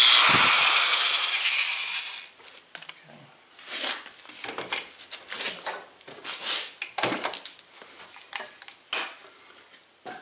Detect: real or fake real